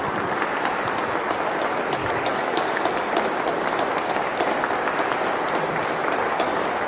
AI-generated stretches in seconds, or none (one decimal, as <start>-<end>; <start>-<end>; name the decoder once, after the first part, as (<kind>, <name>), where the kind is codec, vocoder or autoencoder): 2.0-2.8 (codec, DAC); 6.0-6.9